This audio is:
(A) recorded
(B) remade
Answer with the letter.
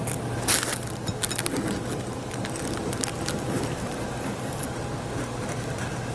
A